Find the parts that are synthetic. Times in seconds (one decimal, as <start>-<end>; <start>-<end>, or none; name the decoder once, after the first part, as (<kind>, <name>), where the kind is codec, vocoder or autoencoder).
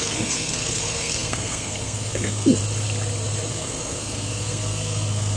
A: 0.0-2.6 (codec, SNAC); 3.5-5.4